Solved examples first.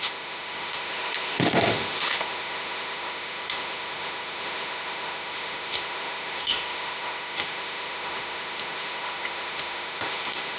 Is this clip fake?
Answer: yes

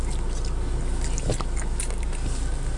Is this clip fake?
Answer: no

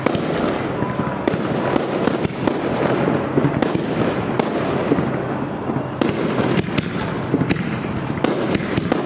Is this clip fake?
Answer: no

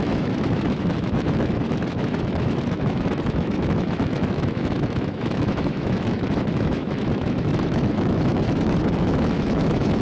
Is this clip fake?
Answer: yes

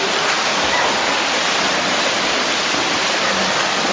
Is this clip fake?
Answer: no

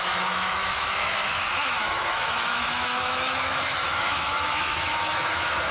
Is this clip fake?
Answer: yes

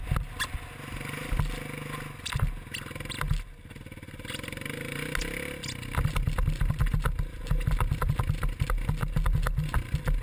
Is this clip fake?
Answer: no